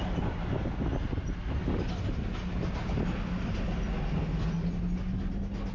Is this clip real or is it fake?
real